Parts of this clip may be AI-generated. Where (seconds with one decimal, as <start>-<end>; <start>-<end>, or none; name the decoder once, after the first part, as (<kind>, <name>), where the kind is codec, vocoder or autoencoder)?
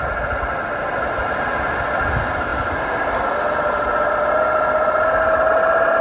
none